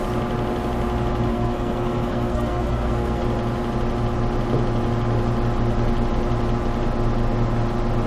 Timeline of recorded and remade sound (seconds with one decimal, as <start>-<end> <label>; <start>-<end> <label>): 0.0-1.3 recorded; 1.3-3.2 remade; 3.2-8.1 recorded

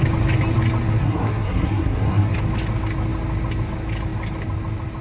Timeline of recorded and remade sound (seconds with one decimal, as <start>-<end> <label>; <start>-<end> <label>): 0.0-1.0 recorded; 1.0-2.3 remade; 2.3-5.0 recorded

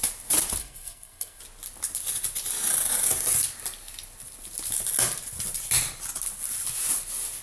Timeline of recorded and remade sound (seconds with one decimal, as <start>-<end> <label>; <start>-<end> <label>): 0.0-0.6 recorded; 0.6-1.4 remade; 1.4-7.4 recorded

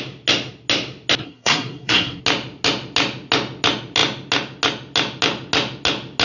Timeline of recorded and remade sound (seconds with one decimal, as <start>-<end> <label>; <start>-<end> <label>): 0.0-1.2 recorded; 1.2-2.2 remade; 2.2-6.2 recorded

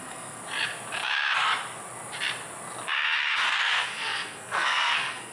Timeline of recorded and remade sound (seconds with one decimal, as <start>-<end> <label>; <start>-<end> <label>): 0.0-0.4 remade; 0.4-3.6 recorded; 3.6-5.3 remade

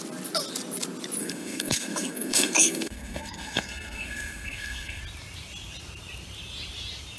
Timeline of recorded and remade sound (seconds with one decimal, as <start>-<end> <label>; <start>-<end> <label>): 0.0-1.2 recorded; 1.2-5.0 remade; 5.0-7.2 recorded